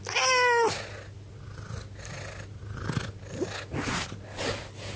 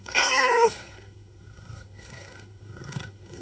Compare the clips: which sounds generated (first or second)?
second